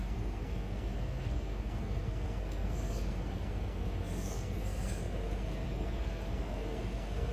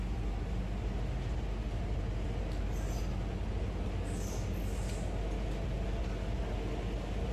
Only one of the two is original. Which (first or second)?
second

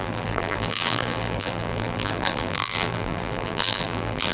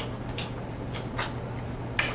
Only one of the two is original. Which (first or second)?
second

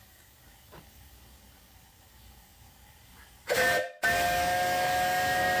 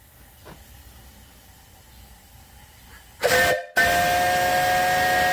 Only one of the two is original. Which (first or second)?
second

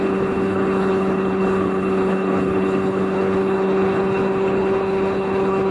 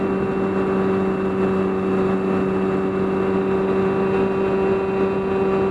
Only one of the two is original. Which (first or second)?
second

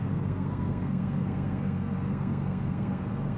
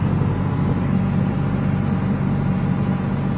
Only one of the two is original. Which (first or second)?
second